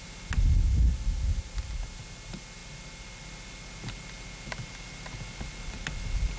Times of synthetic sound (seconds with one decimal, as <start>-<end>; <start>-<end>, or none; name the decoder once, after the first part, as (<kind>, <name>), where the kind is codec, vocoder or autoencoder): none